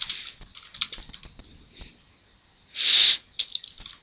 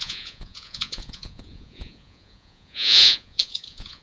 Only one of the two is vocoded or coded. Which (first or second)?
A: second